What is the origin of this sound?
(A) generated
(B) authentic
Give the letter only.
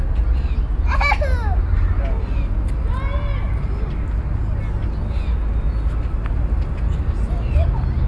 B